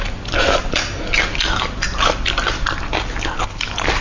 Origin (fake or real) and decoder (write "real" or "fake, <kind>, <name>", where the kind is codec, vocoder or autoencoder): real